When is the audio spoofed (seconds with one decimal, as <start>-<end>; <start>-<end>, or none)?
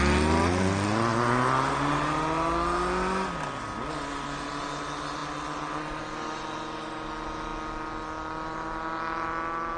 none